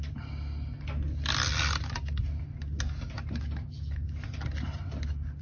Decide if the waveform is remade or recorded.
recorded